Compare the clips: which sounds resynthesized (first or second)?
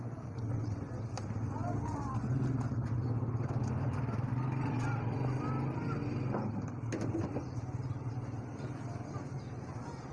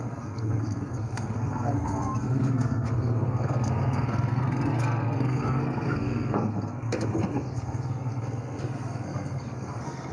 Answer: second